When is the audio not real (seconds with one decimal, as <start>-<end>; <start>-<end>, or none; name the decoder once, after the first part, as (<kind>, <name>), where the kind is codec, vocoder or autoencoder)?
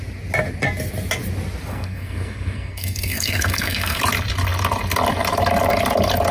1.7-4.0 (codec, SNAC)